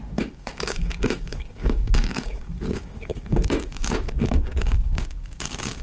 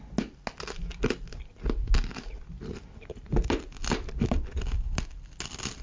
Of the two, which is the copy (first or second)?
first